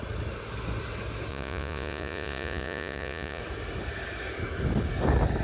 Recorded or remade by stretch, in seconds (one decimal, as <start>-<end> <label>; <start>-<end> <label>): 0.0-1.3 recorded; 1.3-3.4 remade; 3.4-5.4 recorded